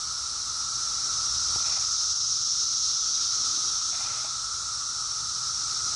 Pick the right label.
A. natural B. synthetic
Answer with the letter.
A